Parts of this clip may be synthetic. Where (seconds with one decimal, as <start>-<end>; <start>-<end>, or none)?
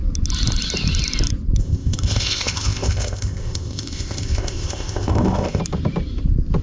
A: 1.6-5.6